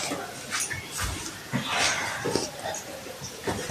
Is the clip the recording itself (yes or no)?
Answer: yes